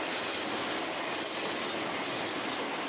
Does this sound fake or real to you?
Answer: real